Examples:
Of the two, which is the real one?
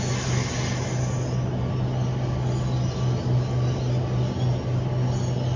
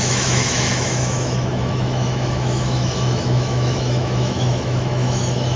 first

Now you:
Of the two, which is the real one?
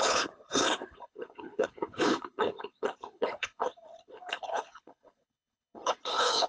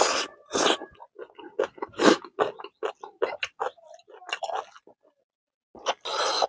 second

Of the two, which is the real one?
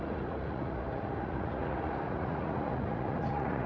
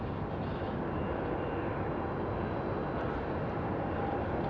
second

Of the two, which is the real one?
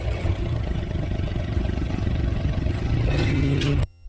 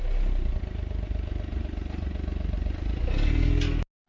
second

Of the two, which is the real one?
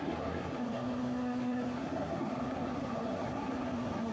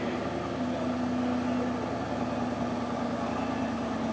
second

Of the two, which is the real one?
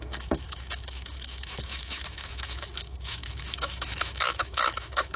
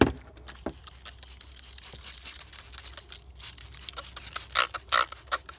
second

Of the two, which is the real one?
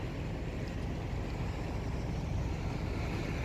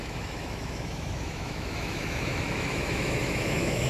first